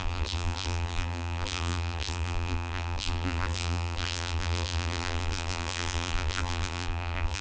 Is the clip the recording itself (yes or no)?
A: no